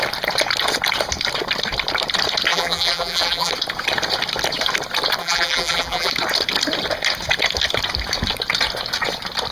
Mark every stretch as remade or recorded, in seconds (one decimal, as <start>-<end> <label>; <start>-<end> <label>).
0.0-2.5 recorded; 2.5-3.5 remade; 3.5-5.2 recorded; 5.2-6.1 remade; 6.1-9.5 recorded